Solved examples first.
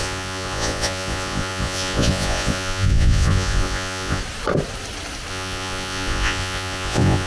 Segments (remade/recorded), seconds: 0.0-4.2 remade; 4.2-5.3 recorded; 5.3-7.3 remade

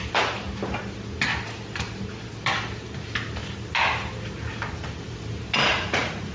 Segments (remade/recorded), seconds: 0.0-5.7 recorded; 5.7-6.3 remade